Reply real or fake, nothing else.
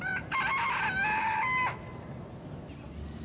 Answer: real